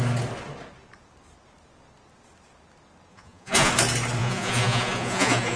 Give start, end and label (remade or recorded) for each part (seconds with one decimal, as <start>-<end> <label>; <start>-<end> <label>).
0.0-3.1 recorded; 3.1-3.7 remade; 3.7-4.2 recorded; 4.2-5.6 remade